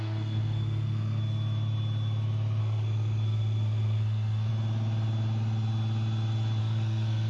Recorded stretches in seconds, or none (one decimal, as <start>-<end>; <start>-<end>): 1.2-2.6; 4.5-6.6